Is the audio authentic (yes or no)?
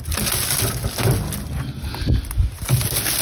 yes